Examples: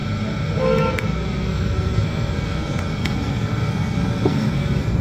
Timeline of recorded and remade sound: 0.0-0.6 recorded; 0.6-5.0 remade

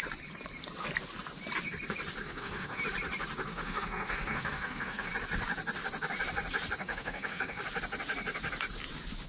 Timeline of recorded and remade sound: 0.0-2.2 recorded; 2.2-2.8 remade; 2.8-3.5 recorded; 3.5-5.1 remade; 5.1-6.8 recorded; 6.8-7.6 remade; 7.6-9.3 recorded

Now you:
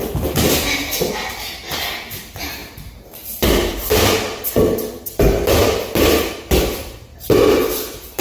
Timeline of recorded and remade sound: 0.0-8.2 recorded

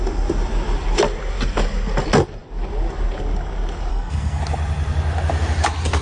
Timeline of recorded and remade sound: 0.0-3.9 recorded; 3.9-4.4 remade; 4.4-6.0 recorded

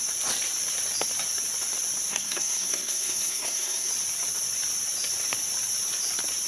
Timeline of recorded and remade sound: 0.0-2.1 recorded; 2.1-3.9 remade; 3.9-6.5 recorded